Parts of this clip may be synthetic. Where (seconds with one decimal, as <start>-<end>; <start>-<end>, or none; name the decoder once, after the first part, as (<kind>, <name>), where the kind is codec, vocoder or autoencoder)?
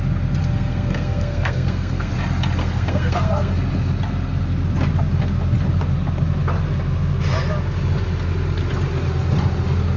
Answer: 0.4-2.1 (codec, SNAC); 2.6-3.6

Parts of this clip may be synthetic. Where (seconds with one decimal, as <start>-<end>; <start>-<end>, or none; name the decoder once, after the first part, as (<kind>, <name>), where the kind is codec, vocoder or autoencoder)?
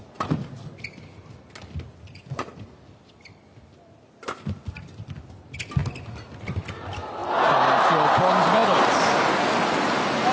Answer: none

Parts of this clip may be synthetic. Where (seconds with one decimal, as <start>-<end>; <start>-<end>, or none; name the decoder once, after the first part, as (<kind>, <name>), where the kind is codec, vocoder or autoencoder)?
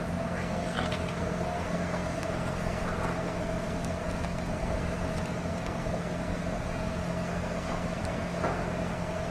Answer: 0.0-9.3 (codec, SNAC)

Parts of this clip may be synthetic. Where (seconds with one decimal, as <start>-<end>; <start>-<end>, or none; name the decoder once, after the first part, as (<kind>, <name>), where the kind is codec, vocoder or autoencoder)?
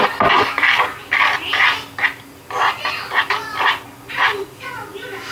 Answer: none